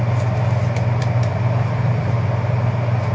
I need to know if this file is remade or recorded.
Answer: recorded